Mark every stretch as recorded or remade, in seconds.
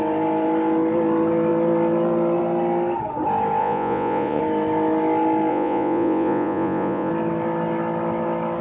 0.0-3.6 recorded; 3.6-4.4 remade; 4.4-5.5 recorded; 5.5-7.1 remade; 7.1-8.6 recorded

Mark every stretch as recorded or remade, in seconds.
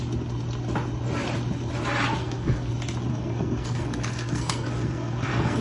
0.0-2.2 recorded; 2.2-2.7 remade; 2.7-3.1 recorded; 3.1-5.6 remade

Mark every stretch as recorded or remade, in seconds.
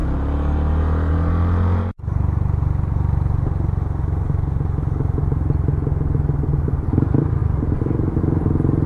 0.0-7.4 recorded; 7.4-8.2 remade; 8.2-8.9 recorded